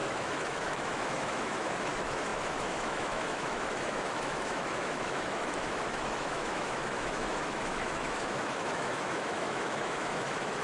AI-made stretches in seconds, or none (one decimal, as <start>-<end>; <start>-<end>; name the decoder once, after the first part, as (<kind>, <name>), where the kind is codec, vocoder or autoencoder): 0.0-10.6 (autoencoder, DAC-VAE)